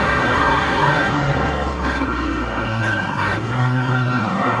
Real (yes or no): no